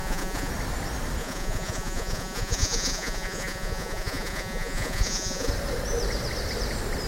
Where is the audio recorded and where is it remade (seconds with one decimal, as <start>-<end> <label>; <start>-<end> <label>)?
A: 0.0-0.5 remade; 0.5-1.2 recorded; 1.2-5.5 remade; 5.5-7.1 recorded